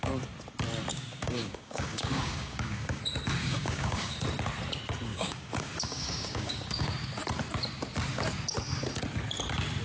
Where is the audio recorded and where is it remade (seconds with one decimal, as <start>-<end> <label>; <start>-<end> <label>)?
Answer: 0.0-0.9 recorded; 0.9-3.0 remade; 3.0-3.4 recorded; 3.4-4.2 remade; 4.2-5.1 recorded; 5.1-6.9 remade; 6.9-9.8 recorded